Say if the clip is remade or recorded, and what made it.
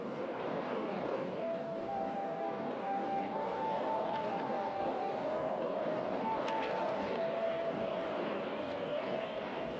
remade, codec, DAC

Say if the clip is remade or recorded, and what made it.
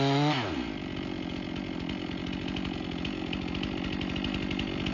recorded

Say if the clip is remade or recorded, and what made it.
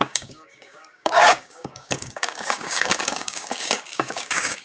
remade, codec, DAC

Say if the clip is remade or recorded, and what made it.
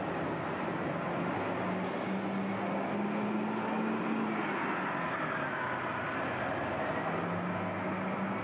recorded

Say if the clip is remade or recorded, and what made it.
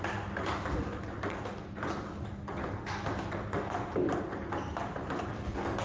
recorded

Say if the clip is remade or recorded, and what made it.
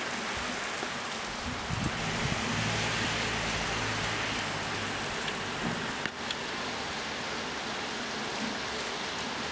recorded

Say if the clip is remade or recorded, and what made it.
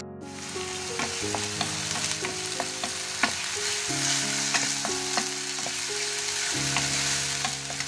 recorded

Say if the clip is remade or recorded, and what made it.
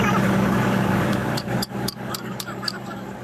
remade, codec, DAC